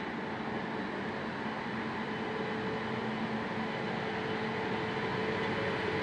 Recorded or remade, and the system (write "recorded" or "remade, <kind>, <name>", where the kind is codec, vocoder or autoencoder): recorded